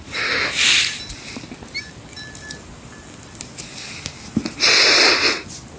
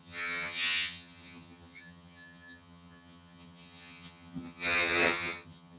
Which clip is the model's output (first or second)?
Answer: second